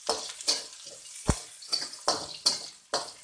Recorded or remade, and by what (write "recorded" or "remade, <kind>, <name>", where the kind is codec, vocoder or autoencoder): recorded